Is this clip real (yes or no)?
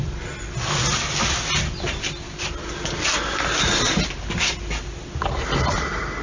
yes